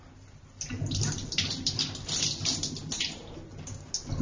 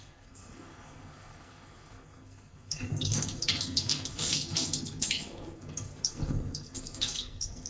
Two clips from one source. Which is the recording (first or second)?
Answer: first